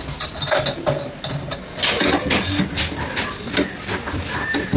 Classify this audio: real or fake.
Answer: real